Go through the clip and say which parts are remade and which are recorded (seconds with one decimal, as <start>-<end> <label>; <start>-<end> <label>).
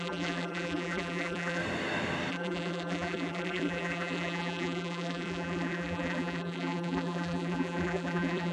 0.0-1.6 remade; 1.6-2.3 recorded; 2.3-8.5 remade